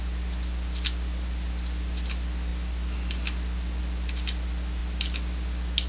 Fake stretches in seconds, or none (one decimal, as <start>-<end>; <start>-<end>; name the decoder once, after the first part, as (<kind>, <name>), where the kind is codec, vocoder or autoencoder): none